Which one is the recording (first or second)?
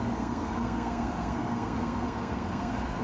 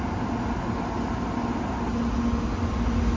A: second